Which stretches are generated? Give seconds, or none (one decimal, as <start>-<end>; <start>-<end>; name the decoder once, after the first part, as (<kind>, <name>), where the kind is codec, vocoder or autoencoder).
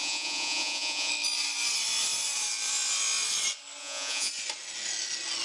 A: 0.0-1.1 (vocoder, Vocos); 3.8-4.3